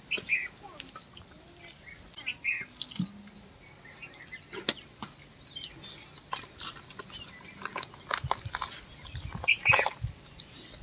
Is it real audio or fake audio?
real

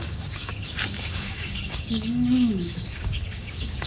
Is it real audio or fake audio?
fake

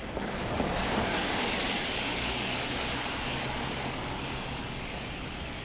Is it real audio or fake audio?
fake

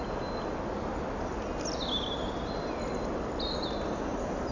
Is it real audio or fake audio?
real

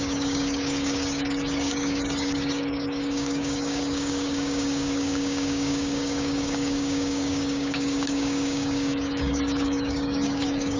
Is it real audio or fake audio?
fake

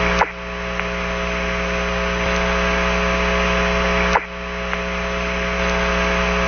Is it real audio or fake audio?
real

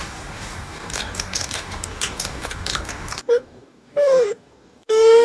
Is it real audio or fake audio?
fake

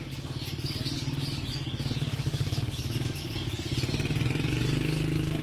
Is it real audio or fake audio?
fake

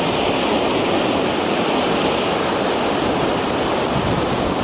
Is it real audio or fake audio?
real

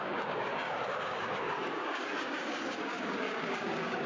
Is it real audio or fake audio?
fake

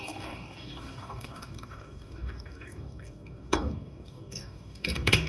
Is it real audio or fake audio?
fake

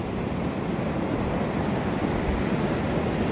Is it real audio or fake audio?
real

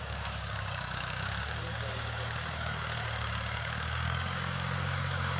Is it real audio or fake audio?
fake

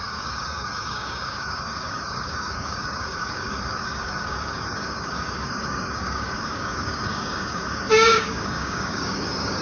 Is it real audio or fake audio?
fake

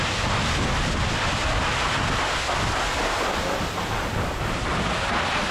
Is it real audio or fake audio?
real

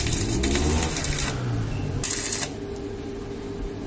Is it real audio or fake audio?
real